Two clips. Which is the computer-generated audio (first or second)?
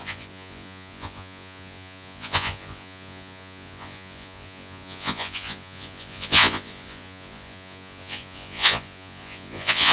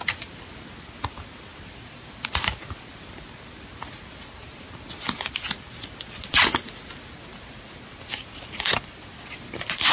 first